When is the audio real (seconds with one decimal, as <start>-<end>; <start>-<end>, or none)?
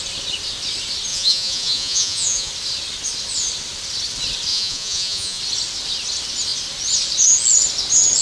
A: 0.0-1.1; 2.5-4.5; 5.4-8.2